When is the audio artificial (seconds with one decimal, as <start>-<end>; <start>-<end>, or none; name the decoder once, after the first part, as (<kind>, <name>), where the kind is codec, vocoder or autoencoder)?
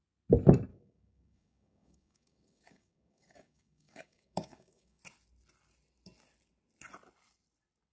0.7-5.0 (codec, DAC)